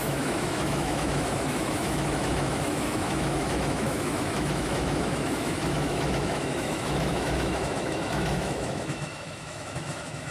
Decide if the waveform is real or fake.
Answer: fake